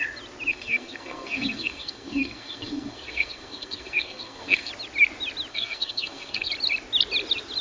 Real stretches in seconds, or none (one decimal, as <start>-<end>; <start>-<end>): 0.0-0.5; 4.7-5.5; 6.5-7.6